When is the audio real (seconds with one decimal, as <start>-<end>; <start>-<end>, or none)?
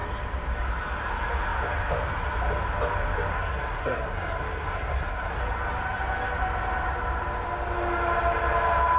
0.0-3.3; 5.4-9.0